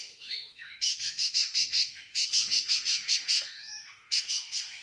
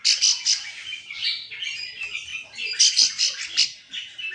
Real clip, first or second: second